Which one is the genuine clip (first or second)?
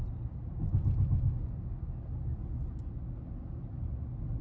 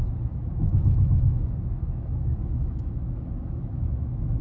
first